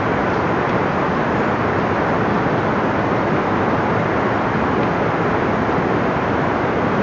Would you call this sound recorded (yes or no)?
yes